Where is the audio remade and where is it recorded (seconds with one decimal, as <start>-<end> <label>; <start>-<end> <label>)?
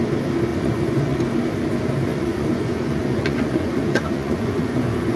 0.0-0.5 recorded; 0.5-1.2 remade; 1.2-2.1 recorded; 2.1-5.2 remade